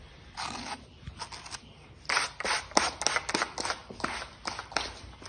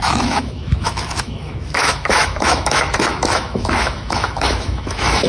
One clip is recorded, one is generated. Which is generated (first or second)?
second